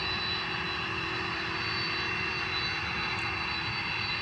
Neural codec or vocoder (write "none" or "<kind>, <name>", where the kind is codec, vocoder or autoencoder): none